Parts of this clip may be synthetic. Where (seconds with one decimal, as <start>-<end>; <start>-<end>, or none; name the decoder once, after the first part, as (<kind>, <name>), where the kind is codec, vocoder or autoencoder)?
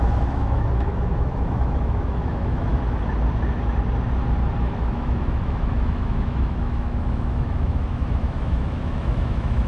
0.0-2.7 (autoencoder, DAC-VAE); 4.6-9.7